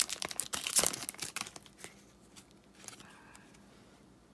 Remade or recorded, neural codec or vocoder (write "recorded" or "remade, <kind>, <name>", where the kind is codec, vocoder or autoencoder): recorded